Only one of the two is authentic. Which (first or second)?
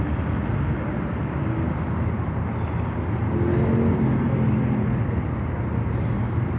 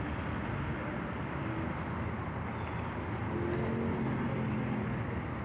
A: second